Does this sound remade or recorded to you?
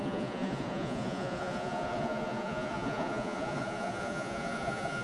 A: remade